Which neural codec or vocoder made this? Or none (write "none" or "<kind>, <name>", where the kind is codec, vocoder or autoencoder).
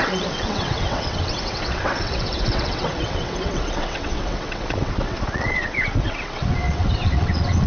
vocoder, WaveNeXt